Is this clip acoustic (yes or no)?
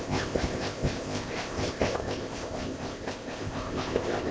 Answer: no